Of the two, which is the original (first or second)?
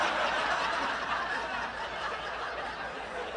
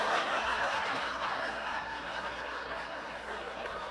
first